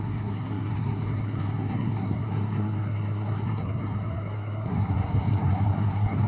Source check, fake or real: fake